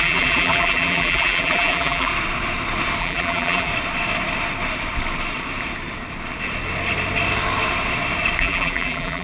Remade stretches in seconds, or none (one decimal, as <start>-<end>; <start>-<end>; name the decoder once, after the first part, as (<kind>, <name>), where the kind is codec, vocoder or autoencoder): 0.0-2.1 (vocoder, BigVGAN v2); 3.0-3.7; 8.4-9.2